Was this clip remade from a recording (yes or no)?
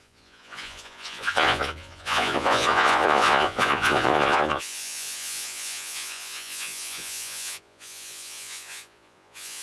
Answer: yes